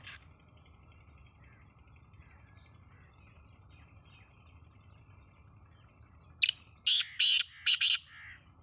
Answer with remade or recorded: recorded